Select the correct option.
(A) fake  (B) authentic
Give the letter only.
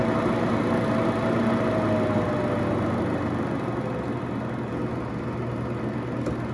B